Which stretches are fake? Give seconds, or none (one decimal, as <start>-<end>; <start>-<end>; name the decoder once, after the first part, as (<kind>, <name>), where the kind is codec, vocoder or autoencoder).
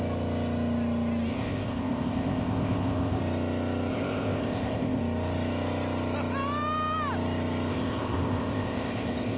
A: 1.3-3.2 (codec, ZipCodec); 3.9-5.0; 7.7-9.4